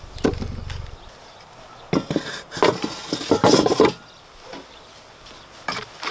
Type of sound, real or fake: real